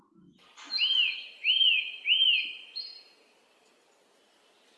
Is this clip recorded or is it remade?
recorded